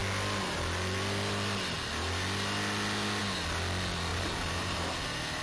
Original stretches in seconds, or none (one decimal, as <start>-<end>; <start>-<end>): 0.0-4.1; 4.9-5.4